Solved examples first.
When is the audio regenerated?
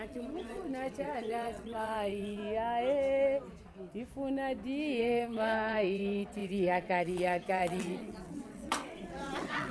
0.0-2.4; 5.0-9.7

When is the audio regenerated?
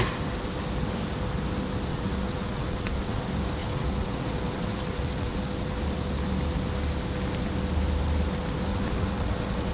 1.9-3.2; 3.6-5.8; 8.7-9.7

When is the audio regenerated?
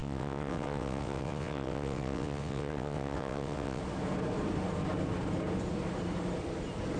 0.0-3.8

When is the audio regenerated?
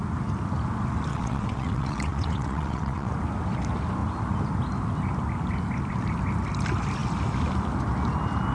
1.1-3.1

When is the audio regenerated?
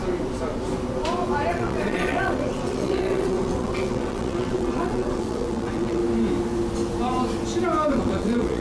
1.5-6.0; 7.9-8.6